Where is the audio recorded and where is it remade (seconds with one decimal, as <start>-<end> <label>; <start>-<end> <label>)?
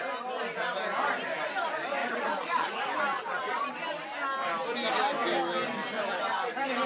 0.0-2.0 recorded; 2.0-2.7 remade; 2.7-3.1 recorded; 3.1-3.7 remade; 3.7-6.9 recorded